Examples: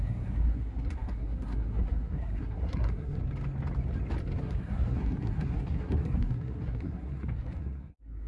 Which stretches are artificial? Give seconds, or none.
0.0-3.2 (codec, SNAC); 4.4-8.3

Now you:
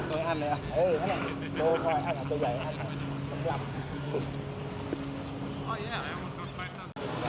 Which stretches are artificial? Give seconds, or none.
3.7-4.2 (codec, SNAC)

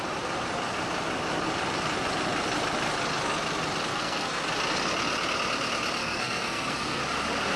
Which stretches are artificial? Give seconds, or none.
3.9-4.4 (codec, SNAC); 6.0-7.0

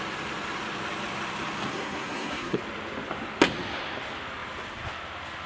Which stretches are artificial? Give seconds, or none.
1.7-2.6 (codec, SNAC)